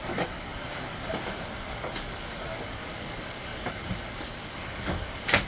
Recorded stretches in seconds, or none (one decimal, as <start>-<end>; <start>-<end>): none